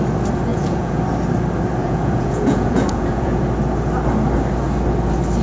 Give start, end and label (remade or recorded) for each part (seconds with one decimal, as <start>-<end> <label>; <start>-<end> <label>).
0.0-0.5 recorded; 0.5-1.0 remade; 1.0-1.8 recorded; 1.8-3.4 remade; 3.4-5.4 recorded